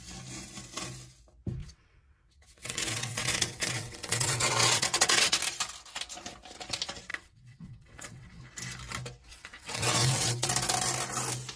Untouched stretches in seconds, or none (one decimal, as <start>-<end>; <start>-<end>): 0.0-1.6; 5.4-7.1; 8.4-9.3; 10.5-11.6